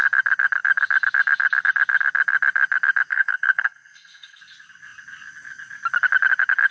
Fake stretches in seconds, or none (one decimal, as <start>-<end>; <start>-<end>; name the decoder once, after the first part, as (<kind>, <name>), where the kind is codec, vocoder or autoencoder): 3.1-4.4 (codec, SNAC)